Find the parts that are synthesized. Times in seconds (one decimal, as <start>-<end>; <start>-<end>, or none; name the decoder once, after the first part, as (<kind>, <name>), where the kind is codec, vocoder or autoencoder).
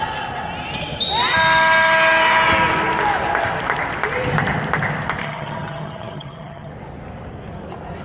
5.2-6.7 (vocoder, HiFi-GAN)